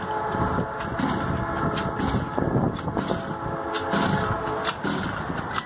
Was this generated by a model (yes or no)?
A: no